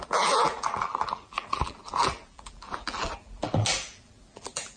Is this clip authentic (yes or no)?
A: no